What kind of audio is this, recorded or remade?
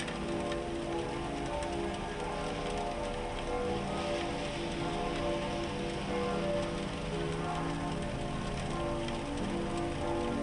recorded